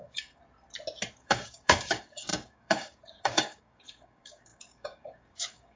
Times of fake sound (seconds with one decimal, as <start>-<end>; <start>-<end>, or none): 0.0-0.4; 1.1-5.8